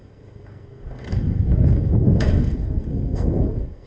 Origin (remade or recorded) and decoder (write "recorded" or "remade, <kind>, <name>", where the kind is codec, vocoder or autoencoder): remade, codec, SNAC